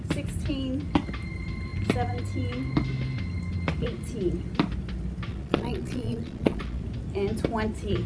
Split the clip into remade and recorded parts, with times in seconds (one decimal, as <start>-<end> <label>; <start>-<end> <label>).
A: 0.0-5.3 recorded; 5.3-6.8 remade; 6.8-8.1 recorded